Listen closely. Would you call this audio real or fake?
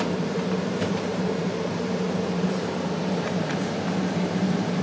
fake